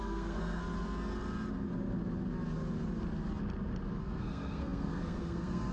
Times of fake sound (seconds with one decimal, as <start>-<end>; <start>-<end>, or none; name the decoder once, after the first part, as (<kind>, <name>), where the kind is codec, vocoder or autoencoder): 0.0-0.6 (codec, SNAC); 4.0-5.7